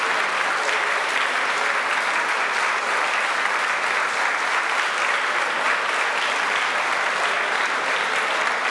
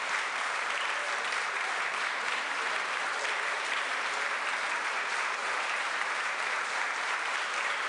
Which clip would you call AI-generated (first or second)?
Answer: second